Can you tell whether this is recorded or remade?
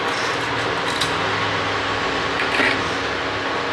recorded